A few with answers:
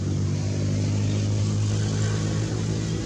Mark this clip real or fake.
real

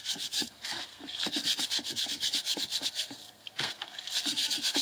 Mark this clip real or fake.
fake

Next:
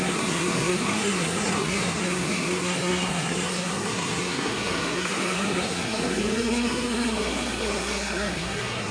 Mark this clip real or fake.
fake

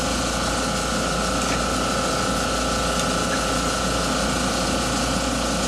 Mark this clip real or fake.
real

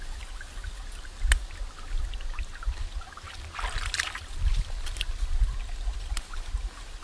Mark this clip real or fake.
real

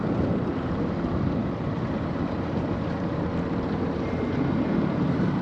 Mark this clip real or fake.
fake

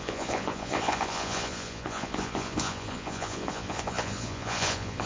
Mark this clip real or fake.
fake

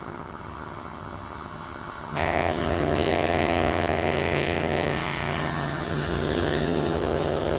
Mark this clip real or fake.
fake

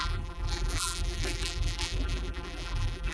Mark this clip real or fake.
fake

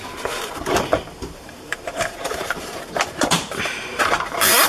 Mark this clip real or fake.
fake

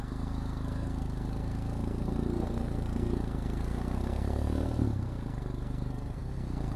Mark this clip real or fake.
fake